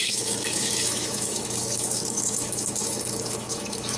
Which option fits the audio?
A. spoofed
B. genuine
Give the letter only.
A